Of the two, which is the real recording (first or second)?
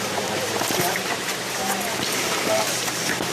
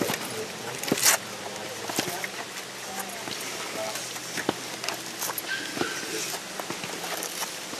second